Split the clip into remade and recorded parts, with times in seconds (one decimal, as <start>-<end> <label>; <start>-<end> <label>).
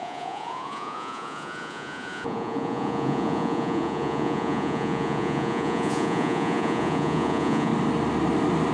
0.0-7.7 remade; 7.7-8.7 recorded